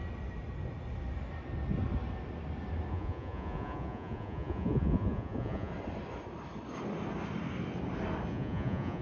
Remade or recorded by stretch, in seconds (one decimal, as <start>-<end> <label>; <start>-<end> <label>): 0.0-2.9 recorded; 2.9-5.7 remade; 5.7-8.3 recorded; 8.3-9.0 remade